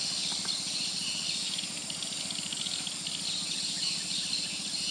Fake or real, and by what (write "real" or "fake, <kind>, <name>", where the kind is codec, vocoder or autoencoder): real